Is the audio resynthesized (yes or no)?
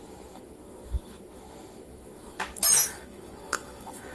yes